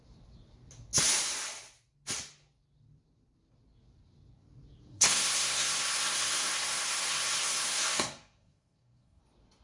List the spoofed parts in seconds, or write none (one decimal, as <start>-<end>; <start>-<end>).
4.9-9.2